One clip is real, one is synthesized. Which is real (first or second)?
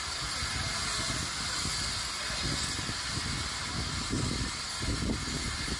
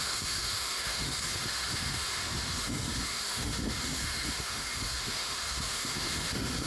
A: first